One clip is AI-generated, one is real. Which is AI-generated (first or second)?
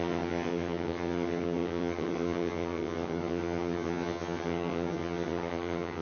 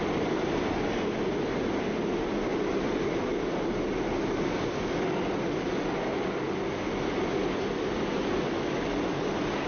first